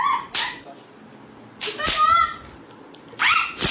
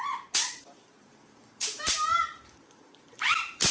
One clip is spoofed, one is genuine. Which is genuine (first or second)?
first